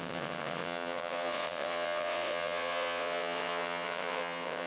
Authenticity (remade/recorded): remade